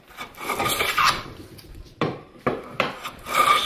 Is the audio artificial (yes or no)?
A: yes